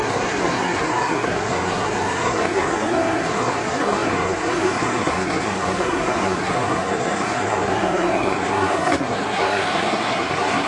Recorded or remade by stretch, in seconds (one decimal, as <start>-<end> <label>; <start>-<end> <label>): 0.0-10.7 remade